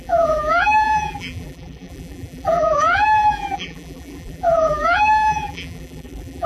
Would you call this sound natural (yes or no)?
no